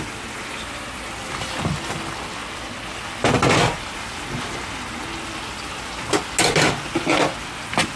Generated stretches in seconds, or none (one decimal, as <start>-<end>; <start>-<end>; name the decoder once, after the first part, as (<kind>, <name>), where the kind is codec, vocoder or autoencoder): none